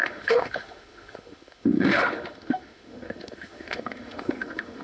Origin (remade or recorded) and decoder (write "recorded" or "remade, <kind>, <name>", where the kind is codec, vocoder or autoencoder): remade, autoencoder, DAC-VAE